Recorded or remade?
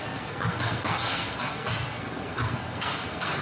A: remade